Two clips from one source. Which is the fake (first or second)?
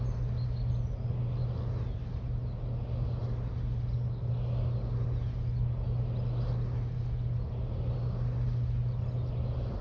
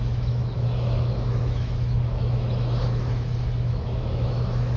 second